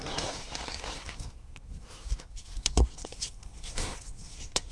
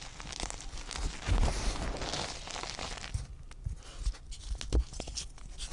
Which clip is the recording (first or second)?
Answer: second